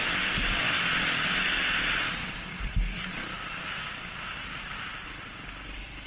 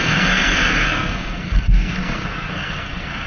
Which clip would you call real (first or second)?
first